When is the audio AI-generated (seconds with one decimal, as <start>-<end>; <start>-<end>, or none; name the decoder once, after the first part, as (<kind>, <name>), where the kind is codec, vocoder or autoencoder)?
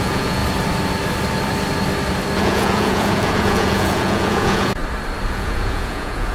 0.0-0.4 (vocoder, Vocos); 2.4-4.8; 5.3-6.3